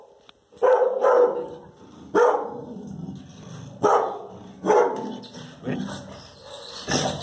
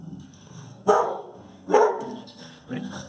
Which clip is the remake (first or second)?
second